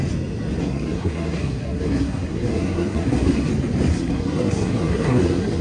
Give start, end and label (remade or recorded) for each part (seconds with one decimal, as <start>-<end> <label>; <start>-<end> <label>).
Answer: 0.0-0.6 recorded; 0.6-3.5 remade; 3.5-3.9 recorded; 3.9-5.6 remade